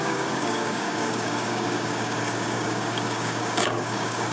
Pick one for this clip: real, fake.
fake